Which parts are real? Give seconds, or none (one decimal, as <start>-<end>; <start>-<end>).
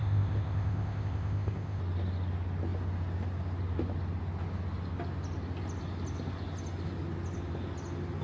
1.8-8.2